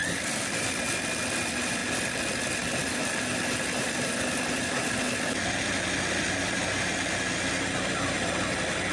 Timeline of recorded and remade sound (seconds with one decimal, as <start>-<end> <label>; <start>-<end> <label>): 0.0-8.9 recorded